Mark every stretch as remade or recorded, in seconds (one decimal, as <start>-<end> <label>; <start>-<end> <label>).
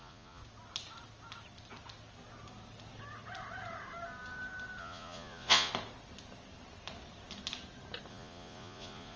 0.0-0.4 remade; 0.4-4.8 recorded; 4.8-5.7 remade; 5.7-8.1 recorded; 8.1-9.2 remade